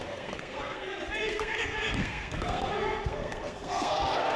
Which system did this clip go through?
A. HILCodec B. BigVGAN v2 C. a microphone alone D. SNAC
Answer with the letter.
D